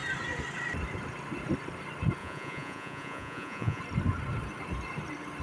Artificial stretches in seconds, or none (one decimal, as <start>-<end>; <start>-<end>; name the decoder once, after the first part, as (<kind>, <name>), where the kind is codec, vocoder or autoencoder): 2.2-3.8 (vocoder, Vocos)